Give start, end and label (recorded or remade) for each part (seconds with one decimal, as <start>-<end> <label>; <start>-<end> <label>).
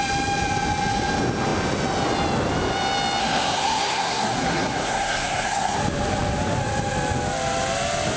0.0-3.2 recorded; 3.2-5.8 remade; 5.8-8.2 recorded